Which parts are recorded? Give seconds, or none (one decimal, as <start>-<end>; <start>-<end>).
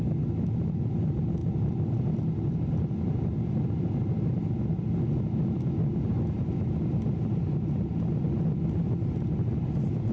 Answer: 0.0-10.1